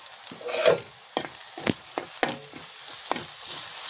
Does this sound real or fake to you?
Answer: real